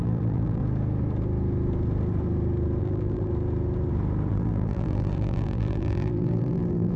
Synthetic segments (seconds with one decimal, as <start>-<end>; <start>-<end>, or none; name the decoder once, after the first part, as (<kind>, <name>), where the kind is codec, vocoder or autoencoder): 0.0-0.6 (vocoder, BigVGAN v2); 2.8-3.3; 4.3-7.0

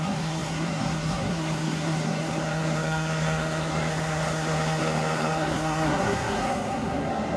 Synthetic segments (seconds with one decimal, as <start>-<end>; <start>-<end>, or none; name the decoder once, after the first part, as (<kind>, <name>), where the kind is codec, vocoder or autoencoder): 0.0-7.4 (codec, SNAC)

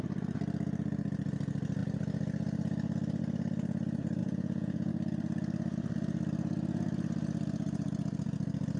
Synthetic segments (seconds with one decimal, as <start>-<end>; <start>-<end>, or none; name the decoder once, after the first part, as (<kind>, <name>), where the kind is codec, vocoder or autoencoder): 4.2-4.9 (vocoder, Vocos)

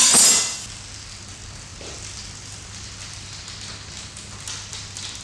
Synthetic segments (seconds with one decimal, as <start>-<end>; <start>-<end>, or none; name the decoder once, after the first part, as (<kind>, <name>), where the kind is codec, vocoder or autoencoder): none